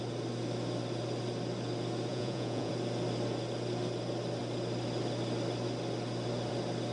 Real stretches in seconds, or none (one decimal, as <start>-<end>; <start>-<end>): 0.0-2.1; 2.7-6.9